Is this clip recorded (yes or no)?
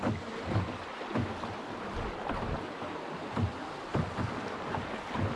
yes